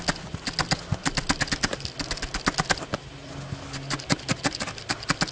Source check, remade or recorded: recorded